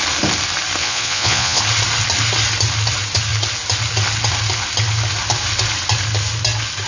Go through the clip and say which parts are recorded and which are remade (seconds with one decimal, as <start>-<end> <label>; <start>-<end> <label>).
0.0-0.8 recorded; 0.8-1.6 remade; 1.6-6.9 recorded